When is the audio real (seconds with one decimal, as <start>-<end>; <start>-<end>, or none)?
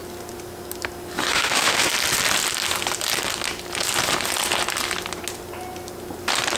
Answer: 0.0-1.3; 1.9-6.6